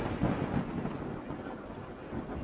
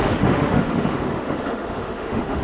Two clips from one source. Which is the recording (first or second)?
first